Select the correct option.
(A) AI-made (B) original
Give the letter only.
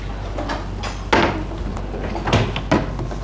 B